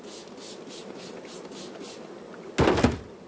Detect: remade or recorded recorded